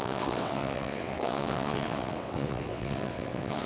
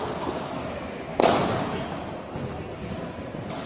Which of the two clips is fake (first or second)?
first